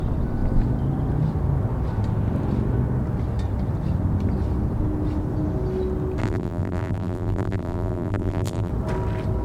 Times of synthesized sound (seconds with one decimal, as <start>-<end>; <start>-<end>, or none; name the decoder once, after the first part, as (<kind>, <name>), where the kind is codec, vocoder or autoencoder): 6.2-8.7 (vocoder, BigVGAN v2)